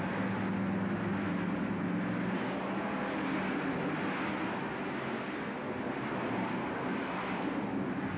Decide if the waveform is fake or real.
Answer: real